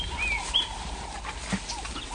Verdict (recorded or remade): recorded